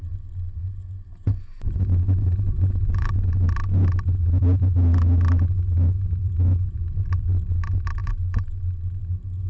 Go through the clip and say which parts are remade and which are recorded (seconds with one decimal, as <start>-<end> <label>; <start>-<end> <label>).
0.0-0.6 recorded; 0.6-3.3 remade; 3.3-8.0 recorded; 8.0-8.6 remade; 8.6-9.5 recorded